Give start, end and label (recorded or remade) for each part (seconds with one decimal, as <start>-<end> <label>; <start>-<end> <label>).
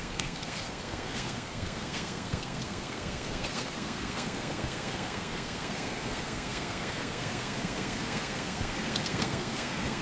0.0-10.0 remade